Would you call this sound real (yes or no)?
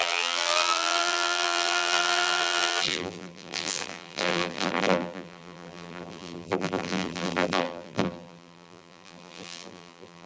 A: no